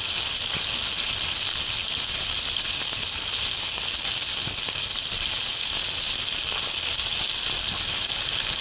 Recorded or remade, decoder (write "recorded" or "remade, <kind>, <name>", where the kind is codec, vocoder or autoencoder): recorded